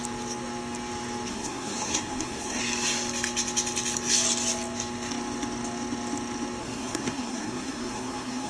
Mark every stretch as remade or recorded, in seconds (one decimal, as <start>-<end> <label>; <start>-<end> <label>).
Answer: 0.0-1.3 recorded; 1.3-2.6 remade; 2.6-6.6 recorded; 6.6-8.5 remade